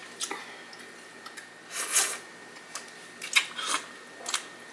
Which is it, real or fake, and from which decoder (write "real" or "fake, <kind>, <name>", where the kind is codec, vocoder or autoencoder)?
real